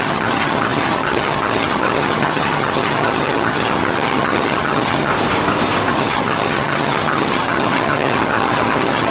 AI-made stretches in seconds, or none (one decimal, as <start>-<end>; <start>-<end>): 0.0-5.1; 5.9-9.1

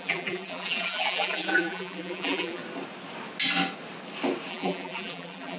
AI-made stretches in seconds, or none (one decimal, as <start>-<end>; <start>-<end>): 0.0-2.6; 4.5-5.6

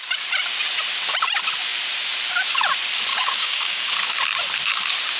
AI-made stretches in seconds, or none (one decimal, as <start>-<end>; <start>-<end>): 3.1-3.9

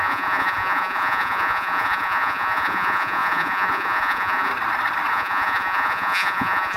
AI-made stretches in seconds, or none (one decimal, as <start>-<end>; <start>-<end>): 0.0-4.5; 5.1-6.8

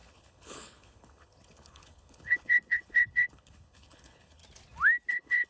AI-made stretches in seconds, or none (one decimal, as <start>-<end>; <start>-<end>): 0.0-4.4; 5.1-5.5

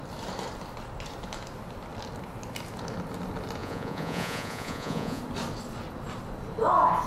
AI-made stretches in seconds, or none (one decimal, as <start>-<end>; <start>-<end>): 3.6-5.2